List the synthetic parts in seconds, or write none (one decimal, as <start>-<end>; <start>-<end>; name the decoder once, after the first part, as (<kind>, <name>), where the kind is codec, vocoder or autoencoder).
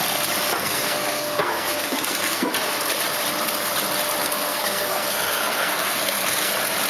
0.6-2.5 (codec, SNAC); 4.2-6.5